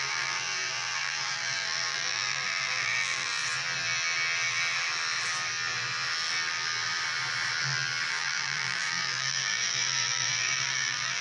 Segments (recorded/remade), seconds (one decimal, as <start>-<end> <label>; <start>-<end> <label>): 0.0-3.4 remade; 3.4-8.1 recorded; 8.1-11.2 remade